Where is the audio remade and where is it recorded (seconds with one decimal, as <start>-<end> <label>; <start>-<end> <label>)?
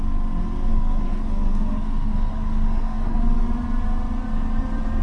0.0-0.7 recorded; 0.7-3.2 remade; 3.2-5.0 recorded